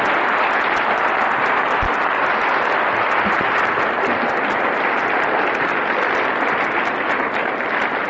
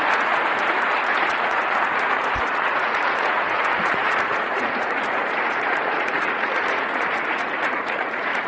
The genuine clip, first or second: first